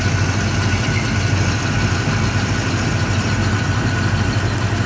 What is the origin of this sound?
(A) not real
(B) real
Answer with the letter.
B